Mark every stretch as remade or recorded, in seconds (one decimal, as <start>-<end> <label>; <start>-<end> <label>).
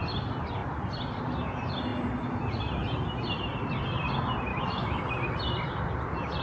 0.0-4.5 recorded; 4.5-5.0 remade; 5.0-6.4 recorded